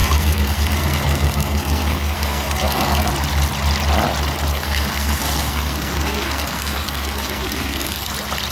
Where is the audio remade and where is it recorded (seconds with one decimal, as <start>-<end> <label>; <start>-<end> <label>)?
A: 0.0-3.1 remade; 3.1-4.5 recorded; 4.5-8.1 remade; 8.1-8.5 recorded